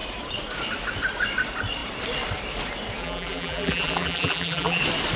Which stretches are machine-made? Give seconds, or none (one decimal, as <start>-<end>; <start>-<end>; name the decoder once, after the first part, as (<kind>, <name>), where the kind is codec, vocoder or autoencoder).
3.0-4.8 (vocoder, BigVGAN v2)